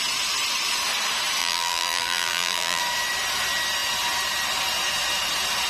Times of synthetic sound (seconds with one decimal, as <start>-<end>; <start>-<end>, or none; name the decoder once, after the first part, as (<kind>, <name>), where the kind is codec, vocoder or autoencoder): 1.4-2.8 (vocoder, BigVGAN v2)